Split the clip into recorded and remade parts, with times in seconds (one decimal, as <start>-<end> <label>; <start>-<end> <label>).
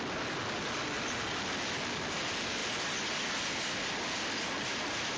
0.0-5.2 recorded